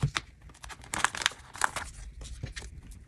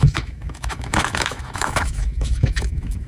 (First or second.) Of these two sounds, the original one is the first